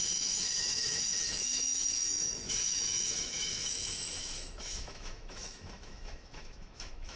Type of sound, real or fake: fake